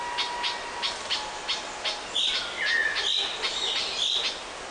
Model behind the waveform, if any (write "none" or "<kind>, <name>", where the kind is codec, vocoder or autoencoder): none